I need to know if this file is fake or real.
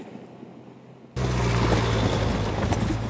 real